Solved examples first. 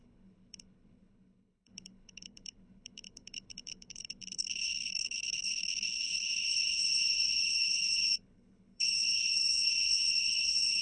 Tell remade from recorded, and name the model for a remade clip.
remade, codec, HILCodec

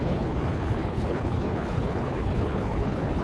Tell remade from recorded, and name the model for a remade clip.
remade, codec, HILCodec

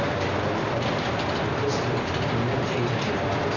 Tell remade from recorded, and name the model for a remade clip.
recorded